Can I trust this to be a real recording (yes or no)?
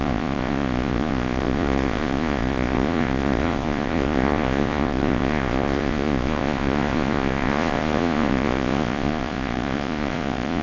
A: no